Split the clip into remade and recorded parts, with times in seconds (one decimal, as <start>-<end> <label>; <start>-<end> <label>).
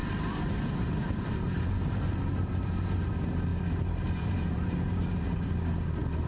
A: 0.0-3.1 remade; 3.1-3.5 recorded; 3.5-5.5 remade; 5.5-6.3 recorded